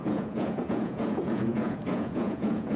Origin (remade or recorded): remade